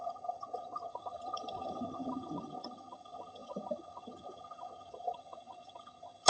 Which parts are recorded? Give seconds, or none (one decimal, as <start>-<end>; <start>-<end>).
none